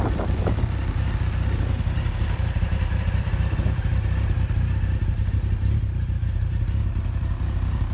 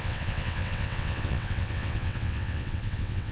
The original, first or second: first